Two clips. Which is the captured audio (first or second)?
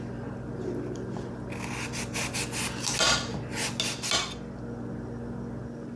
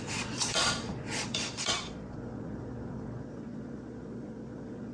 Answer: first